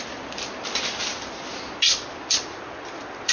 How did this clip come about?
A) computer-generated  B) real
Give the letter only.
A